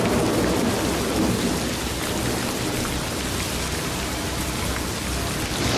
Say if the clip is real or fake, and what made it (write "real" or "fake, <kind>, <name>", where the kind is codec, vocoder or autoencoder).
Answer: real